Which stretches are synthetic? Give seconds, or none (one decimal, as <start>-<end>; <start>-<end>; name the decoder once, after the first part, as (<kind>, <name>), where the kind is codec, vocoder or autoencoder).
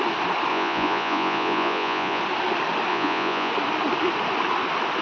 0.5-2.2 (vocoder, Vocos); 2.9-3.5